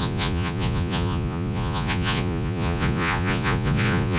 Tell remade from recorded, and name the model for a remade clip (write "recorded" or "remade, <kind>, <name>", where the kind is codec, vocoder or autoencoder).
remade, vocoder, Vocos